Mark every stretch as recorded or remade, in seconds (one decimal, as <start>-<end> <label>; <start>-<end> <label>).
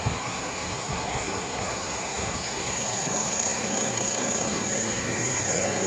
0.0-5.9 remade